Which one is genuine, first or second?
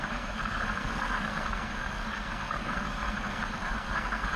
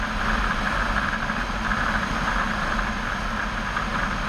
second